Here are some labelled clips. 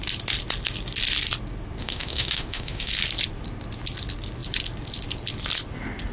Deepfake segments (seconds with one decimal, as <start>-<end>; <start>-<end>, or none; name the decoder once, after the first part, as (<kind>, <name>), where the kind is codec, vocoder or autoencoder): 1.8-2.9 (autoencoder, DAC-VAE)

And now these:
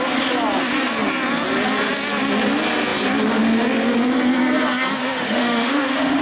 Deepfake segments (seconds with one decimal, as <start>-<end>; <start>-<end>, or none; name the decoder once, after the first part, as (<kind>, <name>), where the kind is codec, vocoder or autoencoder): 5.0-6.2 (autoencoder, DAC-VAE)

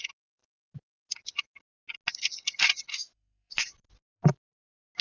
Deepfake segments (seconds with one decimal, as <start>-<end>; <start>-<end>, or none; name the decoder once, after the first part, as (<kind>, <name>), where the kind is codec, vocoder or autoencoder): 2.9-3.5 (autoencoder, DAC-VAE)

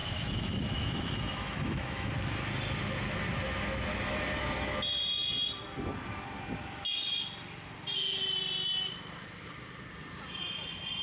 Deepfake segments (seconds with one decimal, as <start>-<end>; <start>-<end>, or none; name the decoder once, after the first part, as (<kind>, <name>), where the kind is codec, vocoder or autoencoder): 0.0-2.1 (autoencoder, DAC-VAE)

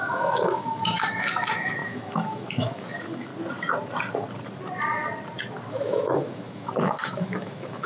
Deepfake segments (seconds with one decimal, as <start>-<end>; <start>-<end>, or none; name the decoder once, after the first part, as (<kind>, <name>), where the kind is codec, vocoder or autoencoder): 0.0-3.3 (autoencoder, DAC-VAE); 5.7-7.9

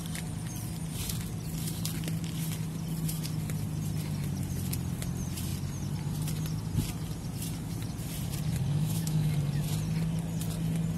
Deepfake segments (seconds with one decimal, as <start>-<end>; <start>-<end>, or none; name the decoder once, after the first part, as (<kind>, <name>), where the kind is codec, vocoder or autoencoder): 8.7-9.3 (autoencoder, DAC-VAE)

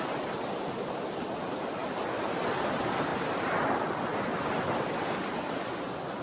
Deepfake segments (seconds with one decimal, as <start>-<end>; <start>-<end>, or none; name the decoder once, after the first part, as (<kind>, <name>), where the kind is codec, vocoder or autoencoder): none

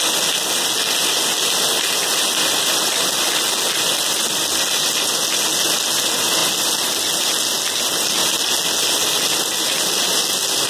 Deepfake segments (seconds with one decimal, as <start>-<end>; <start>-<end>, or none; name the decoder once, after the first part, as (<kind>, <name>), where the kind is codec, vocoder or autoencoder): none